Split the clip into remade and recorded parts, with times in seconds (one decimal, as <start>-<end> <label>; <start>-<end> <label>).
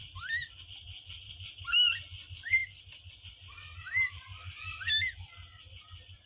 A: 0.0-6.3 recorded